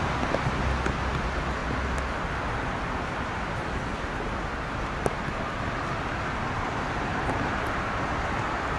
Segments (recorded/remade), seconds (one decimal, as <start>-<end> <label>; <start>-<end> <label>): 0.0-8.8 recorded